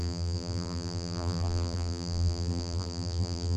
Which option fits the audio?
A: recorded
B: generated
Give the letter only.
B